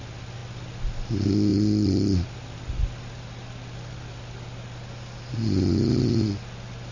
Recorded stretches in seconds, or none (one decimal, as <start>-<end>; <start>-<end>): 0.0-6.9